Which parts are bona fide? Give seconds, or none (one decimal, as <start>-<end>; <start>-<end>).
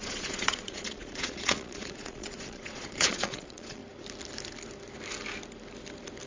3.8-6.3